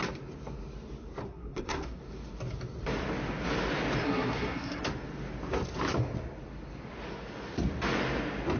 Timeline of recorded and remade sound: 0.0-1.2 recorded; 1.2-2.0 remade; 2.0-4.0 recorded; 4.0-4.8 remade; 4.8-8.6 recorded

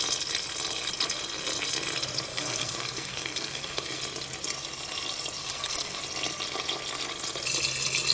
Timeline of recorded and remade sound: 0.0-2.3 recorded; 2.3-4.0 remade; 4.0-5.4 recorded; 5.4-6.0 remade; 6.0-8.1 recorded